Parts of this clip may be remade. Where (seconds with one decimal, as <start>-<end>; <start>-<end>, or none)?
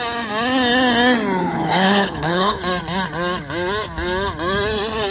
1.4-2.6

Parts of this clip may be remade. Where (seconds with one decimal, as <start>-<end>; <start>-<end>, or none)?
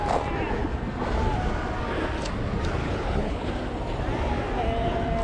2.8-3.5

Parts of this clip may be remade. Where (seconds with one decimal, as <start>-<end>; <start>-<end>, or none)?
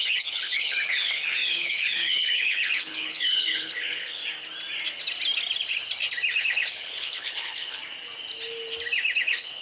0.0-4.2; 6.4-7.8; 9.2-9.6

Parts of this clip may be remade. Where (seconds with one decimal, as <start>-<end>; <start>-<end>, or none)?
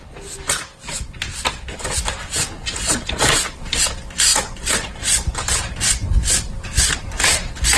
none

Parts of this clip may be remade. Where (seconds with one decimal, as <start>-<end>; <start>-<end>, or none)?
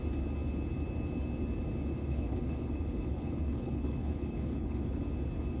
2.0-5.0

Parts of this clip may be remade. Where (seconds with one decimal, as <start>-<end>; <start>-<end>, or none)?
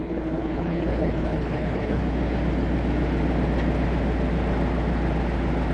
0.0-2.0